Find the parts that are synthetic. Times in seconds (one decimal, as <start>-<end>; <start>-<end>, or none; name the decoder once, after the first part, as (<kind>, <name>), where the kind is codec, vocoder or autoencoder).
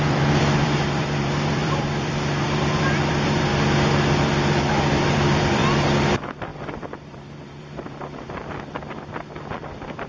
0.0-3.5 (vocoder, BigVGAN v2); 4.7-5.6; 6.1-10.1